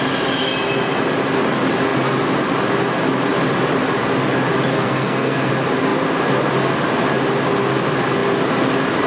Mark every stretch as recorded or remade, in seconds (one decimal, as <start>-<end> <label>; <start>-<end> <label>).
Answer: 0.0-4.7 recorded; 4.7-5.5 remade; 5.5-9.1 recorded